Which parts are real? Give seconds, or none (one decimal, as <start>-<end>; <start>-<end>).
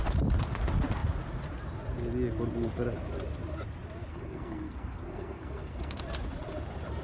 0.0-4.1; 6.0-7.0